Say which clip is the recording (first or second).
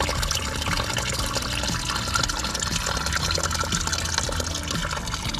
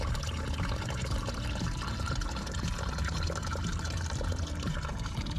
first